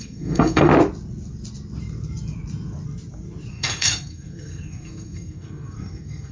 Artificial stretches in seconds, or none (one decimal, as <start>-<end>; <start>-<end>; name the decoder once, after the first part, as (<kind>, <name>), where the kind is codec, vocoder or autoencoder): 0.0-0.7 (codec, SNAC); 3.5-6.3